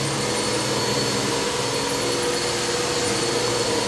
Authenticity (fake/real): real